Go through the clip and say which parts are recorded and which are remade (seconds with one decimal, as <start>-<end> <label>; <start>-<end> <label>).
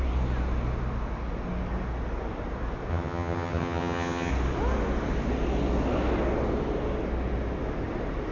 0.0-2.9 recorded; 2.9-4.3 remade; 4.3-8.3 recorded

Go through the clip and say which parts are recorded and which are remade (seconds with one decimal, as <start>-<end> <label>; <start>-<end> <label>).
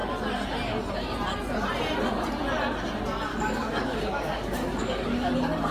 0.0-3.3 recorded; 3.3-5.3 remade; 5.3-5.7 recorded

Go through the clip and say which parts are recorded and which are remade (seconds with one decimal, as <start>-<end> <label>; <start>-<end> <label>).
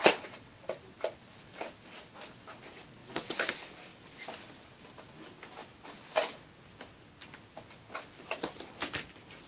0.0-0.8 remade; 0.8-3.0 recorded; 3.0-3.5 remade; 3.5-9.5 recorded